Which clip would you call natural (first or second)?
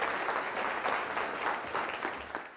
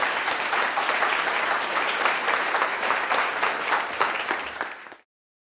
first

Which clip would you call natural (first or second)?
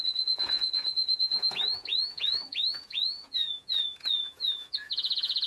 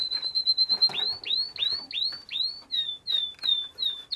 second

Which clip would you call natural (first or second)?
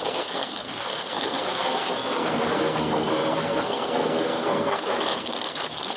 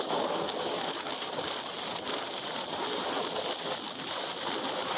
second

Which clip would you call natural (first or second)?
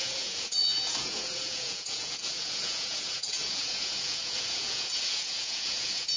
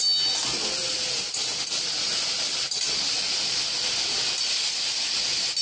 second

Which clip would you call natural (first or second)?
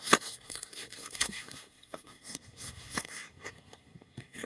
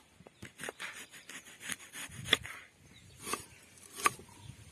second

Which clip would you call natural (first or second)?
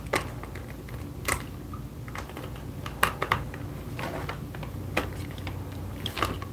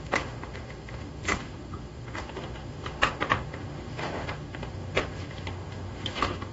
first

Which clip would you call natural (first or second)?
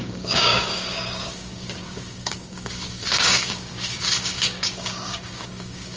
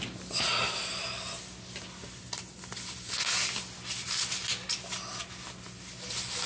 second